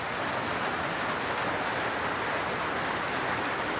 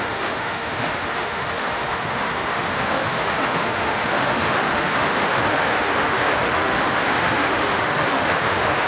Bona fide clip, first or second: first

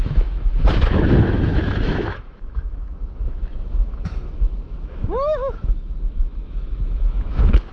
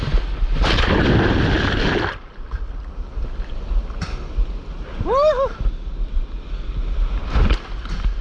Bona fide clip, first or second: second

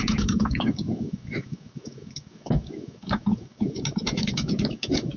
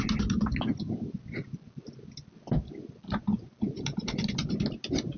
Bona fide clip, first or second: second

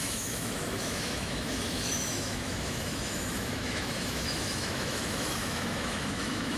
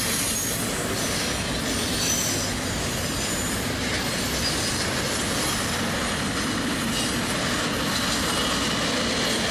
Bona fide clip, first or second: second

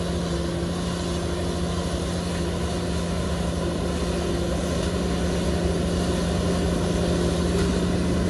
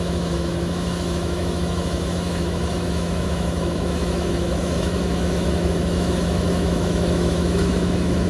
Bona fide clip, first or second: first